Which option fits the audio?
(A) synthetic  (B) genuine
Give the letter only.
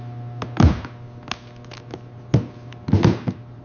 B